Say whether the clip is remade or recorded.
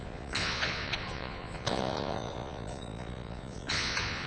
remade